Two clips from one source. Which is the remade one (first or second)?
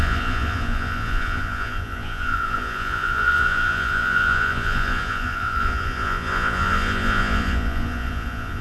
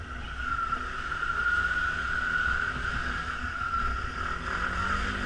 first